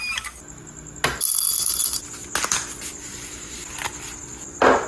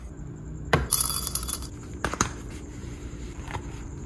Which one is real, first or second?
first